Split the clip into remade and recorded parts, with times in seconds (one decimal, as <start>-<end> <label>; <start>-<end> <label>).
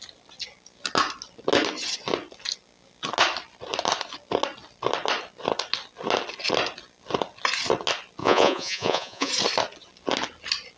0.0-8.2 recorded; 8.2-9.3 remade; 9.3-10.8 recorded